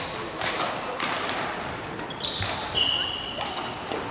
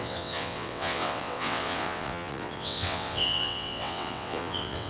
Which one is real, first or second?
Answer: first